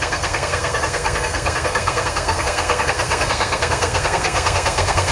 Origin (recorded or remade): remade